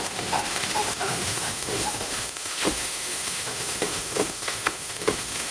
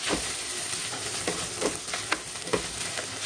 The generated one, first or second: first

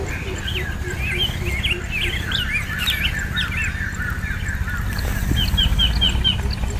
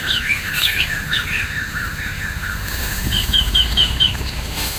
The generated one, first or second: second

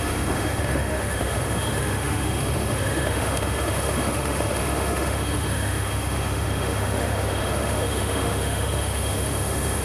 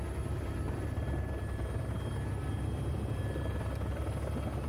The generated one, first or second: first